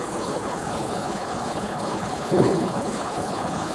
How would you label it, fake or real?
fake